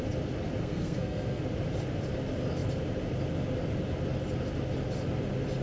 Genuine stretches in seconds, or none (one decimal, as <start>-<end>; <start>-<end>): 0.0-0.6; 1.4-5.6

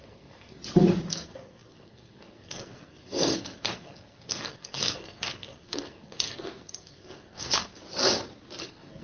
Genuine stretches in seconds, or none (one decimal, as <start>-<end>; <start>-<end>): 0.6-1.1; 7.8-8.6

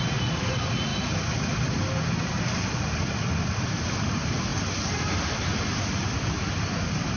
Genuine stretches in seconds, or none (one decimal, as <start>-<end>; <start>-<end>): 0.0-7.2

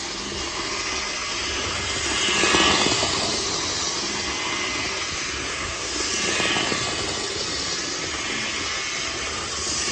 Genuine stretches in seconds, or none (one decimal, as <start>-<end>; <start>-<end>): 0.0-5.5; 6.1-9.9

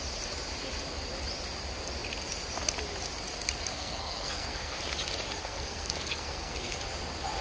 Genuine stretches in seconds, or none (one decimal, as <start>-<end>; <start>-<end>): 0.0-3.7; 4.8-5.4; 6.8-7.4

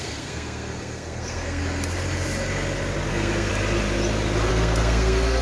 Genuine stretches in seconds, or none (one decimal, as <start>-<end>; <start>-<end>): 1.6-3.1; 3.5-4.5

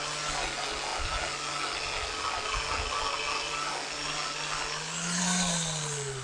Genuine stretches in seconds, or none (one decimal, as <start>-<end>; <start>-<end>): 0.0-6.2

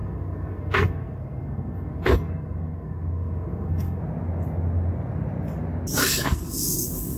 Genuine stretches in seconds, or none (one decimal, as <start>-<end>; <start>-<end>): 4.0-6.0